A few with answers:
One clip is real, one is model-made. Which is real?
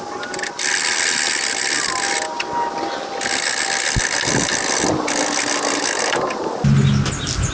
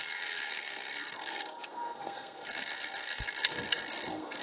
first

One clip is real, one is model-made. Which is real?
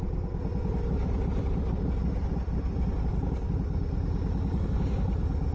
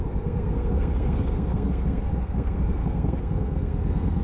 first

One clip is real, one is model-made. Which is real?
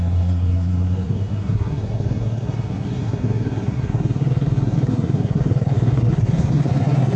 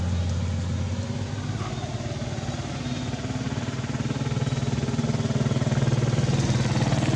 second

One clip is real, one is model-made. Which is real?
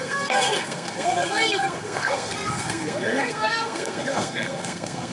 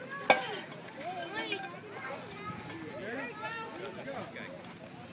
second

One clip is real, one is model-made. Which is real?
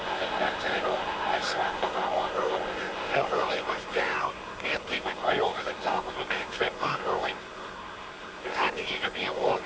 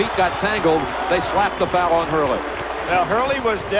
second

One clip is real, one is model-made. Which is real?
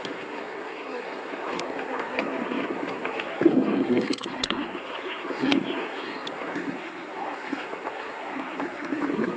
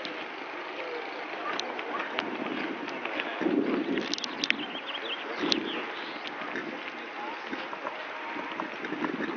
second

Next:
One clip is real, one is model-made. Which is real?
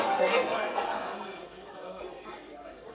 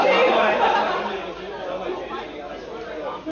second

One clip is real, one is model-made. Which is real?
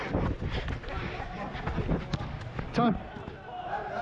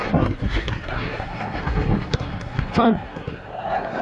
first